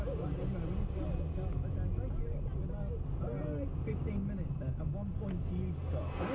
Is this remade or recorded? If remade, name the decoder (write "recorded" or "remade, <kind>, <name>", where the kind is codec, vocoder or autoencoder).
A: recorded